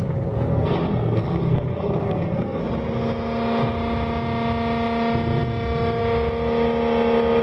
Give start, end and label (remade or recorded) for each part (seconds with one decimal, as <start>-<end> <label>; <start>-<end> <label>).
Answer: 0.0-0.5 recorded; 0.5-2.6 remade; 2.6-7.4 recorded